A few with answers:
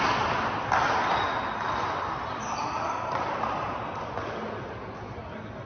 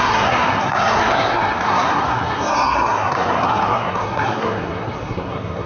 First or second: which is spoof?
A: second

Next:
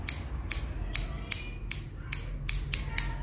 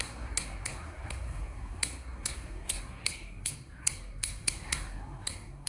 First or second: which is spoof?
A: second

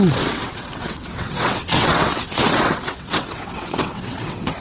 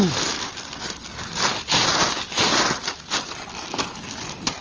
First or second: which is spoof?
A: first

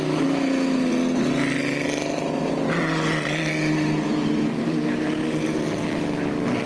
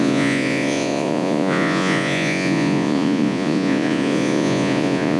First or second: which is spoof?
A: second